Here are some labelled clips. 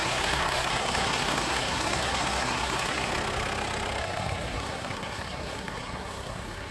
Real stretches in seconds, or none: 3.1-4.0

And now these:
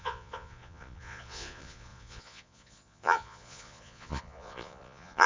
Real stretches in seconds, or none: none

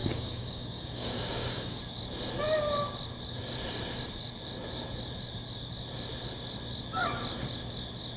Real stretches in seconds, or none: 1.8-8.2

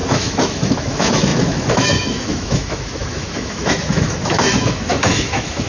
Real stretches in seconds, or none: none

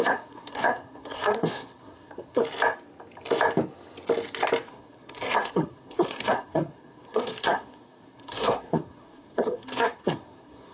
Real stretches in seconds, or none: 2.4-4.7

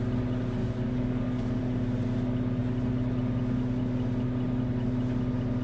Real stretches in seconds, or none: 0.0-0.6; 1.6-5.6